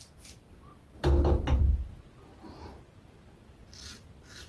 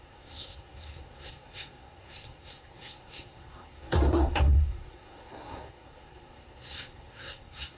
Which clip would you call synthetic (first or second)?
second